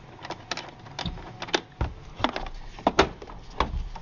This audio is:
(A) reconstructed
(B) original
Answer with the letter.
B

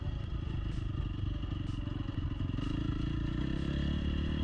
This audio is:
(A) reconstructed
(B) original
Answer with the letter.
B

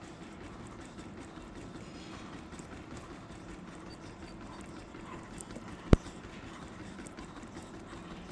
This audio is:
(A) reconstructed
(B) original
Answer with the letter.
B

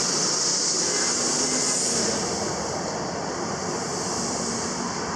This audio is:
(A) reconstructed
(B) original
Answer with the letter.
B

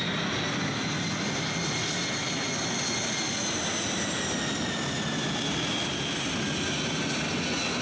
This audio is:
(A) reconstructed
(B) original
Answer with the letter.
B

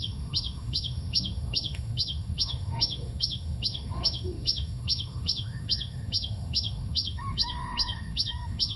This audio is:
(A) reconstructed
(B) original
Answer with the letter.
A